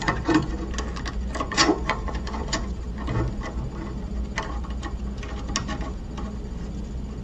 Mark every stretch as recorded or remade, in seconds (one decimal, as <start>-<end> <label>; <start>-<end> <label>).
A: 0.0-0.5 remade; 0.5-1.4 recorded; 1.4-2.6 remade; 2.6-7.2 recorded